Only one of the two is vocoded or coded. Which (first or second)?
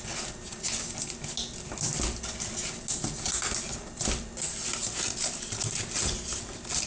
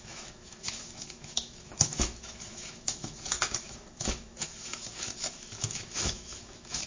second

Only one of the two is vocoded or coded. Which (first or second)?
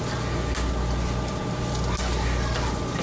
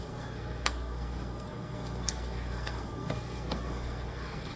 second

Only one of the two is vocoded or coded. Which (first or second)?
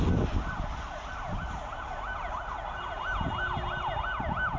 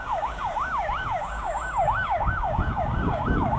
second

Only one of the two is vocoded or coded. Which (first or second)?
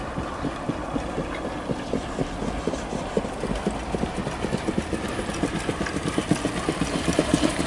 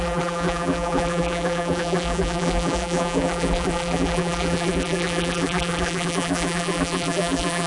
second